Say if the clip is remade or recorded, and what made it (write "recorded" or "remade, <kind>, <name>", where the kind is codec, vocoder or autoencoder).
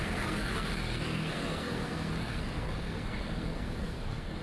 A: remade, codec, SNAC